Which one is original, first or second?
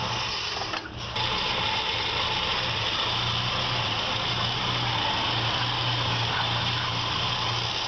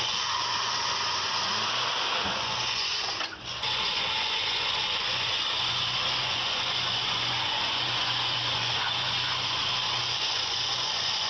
first